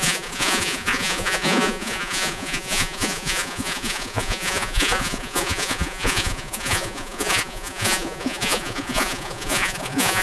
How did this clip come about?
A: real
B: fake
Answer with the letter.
B